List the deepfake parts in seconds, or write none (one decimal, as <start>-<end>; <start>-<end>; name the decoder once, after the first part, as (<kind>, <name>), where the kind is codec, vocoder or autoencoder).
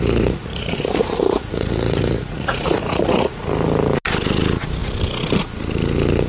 0.0-3.4 (vocoder, Vocos)